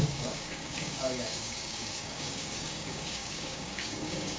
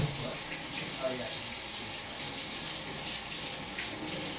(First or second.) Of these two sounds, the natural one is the second